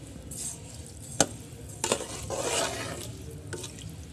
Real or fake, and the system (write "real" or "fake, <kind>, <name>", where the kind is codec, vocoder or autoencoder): real